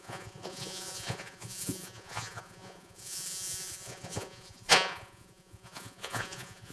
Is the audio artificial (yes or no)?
yes